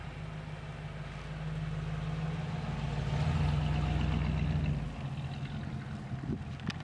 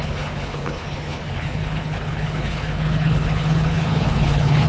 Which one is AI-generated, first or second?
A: second